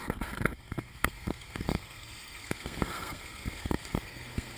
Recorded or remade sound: remade